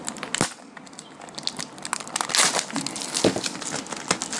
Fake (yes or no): no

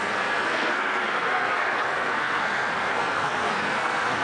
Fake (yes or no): yes